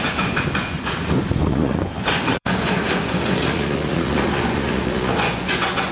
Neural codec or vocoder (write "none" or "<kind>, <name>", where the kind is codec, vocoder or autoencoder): vocoder, Vocos